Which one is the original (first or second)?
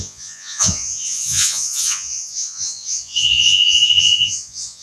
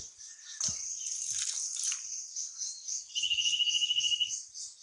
second